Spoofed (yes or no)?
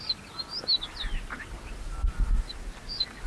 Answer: no